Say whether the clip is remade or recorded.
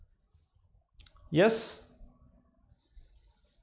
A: recorded